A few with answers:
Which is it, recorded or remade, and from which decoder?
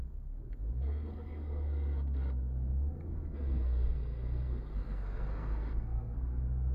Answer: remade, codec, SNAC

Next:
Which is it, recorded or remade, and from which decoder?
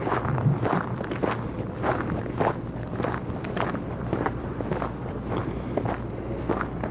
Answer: remade, vocoder, BigVGAN v2